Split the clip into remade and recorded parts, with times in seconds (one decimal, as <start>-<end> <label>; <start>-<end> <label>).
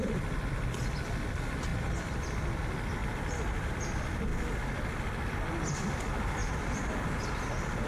0.0-7.9 remade